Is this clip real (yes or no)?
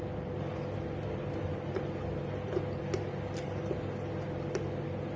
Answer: yes